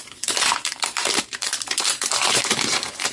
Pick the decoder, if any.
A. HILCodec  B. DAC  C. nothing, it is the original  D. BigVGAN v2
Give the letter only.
D